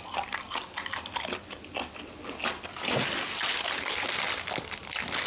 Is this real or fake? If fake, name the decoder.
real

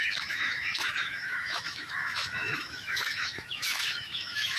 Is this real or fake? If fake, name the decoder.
fake, autoencoder, DAC-VAE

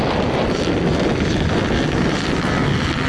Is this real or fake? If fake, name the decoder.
real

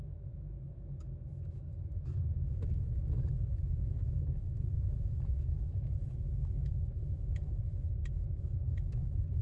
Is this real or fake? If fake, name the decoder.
fake, autoencoder, DAC-VAE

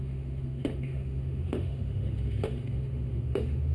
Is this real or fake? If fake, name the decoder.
fake, autoencoder, DAC-VAE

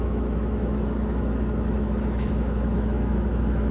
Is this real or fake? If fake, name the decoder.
fake, autoencoder, DAC-VAE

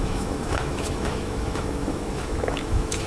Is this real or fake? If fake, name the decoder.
fake, autoencoder, DAC-VAE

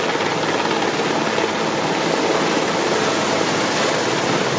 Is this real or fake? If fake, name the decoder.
real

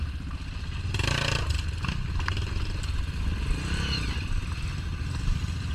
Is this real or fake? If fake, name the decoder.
real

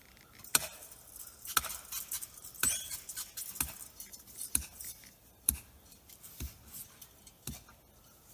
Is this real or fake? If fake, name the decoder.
real